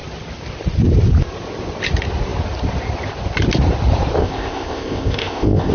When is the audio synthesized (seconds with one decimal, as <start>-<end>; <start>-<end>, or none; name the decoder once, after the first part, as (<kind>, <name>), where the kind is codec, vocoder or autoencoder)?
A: 4.2-5.7 (codec, ZipCodec)